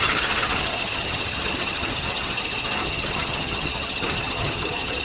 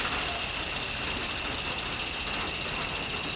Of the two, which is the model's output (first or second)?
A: first